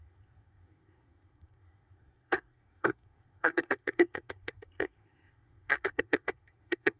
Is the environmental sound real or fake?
fake